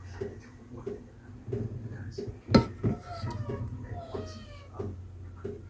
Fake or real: real